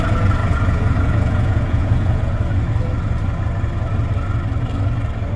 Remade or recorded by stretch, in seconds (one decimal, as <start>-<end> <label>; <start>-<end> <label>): 0.0-0.4 recorded; 0.4-2.2 remade; 2.2-5.4 recorded